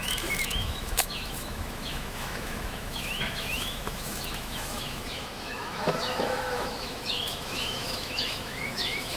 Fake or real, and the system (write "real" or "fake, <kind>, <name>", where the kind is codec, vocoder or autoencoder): fake, autoencoder, DAC-VAE